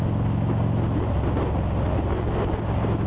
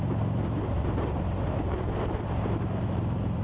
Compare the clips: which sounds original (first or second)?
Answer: first